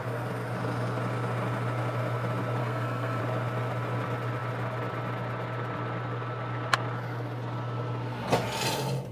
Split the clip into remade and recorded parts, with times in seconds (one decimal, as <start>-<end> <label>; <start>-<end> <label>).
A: 0.0-2.6 recorded; 2.6-3.2 remade; 3.2-9.1 recorded